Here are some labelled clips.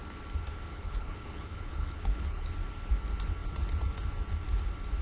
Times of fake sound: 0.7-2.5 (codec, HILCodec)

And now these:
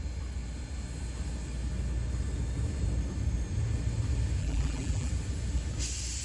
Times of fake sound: 4.4-5.1 (vocoder, BigVGAN v2)

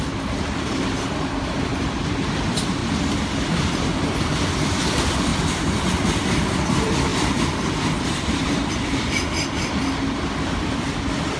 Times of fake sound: 0.0-2.8 (vocoder, BigVGAN v2); 4.1-5.3; 5.9-11.4